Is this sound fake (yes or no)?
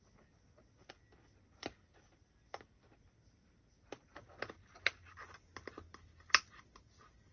no